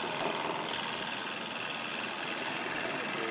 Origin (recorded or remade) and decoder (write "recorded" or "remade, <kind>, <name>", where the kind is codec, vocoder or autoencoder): recorded